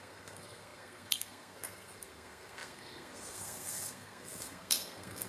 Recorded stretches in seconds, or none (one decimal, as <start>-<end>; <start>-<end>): none